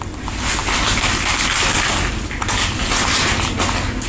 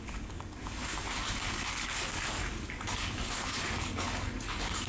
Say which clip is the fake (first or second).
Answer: second